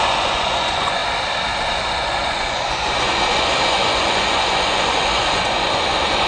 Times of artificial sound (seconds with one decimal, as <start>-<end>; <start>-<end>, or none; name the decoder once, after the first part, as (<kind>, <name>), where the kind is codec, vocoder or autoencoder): 0.0-1.0 (vocoder, Vocos); 1.6-6.3